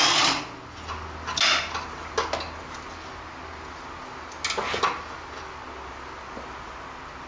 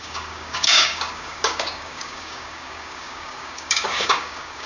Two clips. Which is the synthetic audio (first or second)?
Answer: second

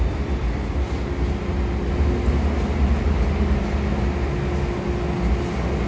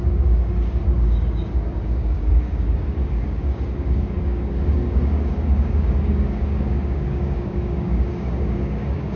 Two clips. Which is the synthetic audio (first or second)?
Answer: second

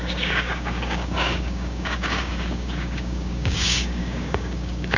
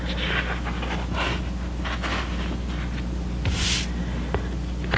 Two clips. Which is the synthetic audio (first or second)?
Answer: first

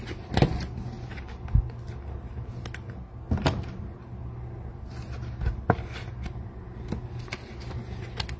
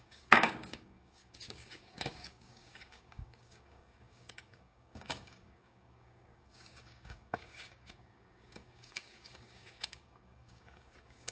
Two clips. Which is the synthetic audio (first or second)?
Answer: second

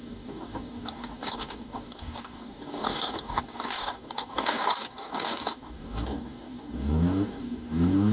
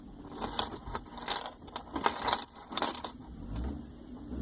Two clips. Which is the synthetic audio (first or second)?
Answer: first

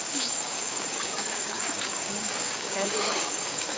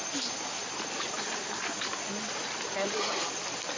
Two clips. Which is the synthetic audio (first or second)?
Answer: first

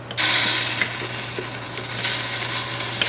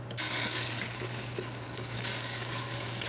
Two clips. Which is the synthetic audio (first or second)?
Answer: second